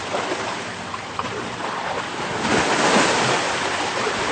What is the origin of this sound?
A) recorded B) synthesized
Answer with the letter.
A